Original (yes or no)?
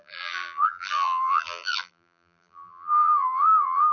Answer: no